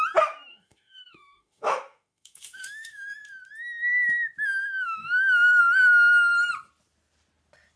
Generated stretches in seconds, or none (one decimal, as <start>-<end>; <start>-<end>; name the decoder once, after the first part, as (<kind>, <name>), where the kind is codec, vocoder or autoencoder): 0.5-3.1 (autoencoder, DAC-VAE); 4.6-5.6